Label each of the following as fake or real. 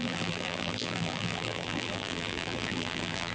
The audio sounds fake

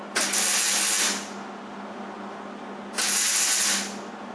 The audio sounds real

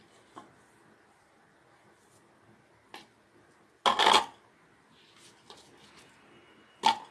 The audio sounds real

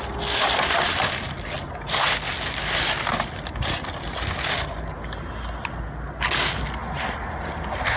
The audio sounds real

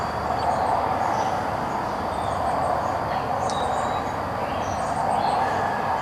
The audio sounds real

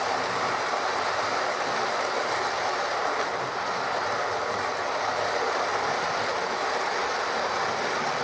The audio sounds real